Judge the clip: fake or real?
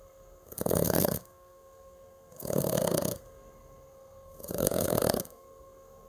fake